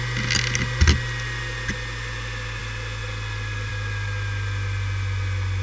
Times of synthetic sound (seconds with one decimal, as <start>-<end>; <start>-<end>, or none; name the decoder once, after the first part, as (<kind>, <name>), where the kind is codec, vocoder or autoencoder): none